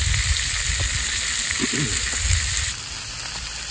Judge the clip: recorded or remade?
recorded